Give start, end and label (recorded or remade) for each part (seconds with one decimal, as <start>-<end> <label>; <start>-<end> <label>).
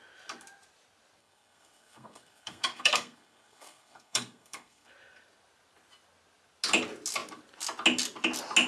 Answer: 0.0-1.2 recorded; 1.2-4.9 remade; 4.9-8.7 recorded